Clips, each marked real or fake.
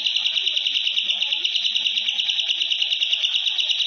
fake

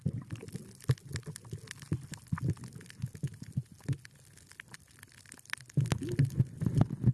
real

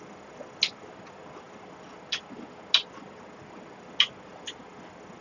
real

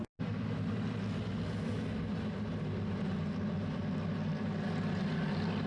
real